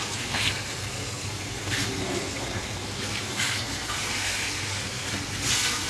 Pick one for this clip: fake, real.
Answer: fake